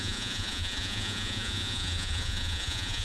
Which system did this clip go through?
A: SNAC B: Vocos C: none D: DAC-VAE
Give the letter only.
B